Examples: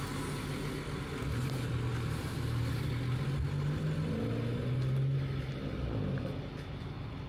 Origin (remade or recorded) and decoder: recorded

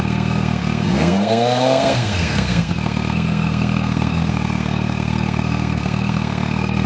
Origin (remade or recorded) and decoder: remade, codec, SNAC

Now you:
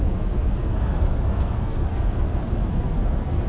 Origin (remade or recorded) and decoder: remade, codec, SNAC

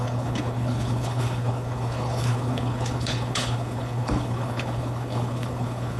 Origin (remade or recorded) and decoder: remade, codec, HILCodec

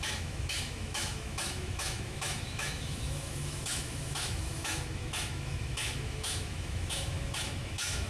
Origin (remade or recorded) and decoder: remade, autoencoder, DAC-VAE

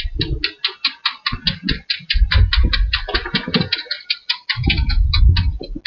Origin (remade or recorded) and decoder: recorded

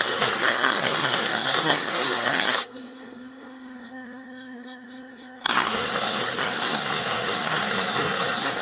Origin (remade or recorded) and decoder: remade, codec, SNAC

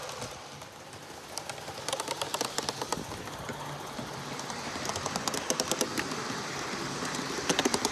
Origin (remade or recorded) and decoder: recorded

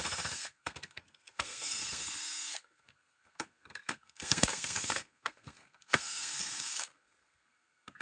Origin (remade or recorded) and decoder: remade, codec, SNAC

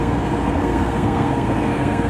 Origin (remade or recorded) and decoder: remade, codec, SNAC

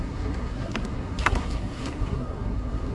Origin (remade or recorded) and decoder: remade, codec, SNAC